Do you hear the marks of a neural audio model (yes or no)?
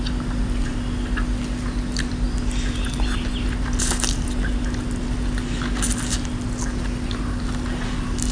no